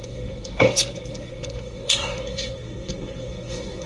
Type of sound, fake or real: fake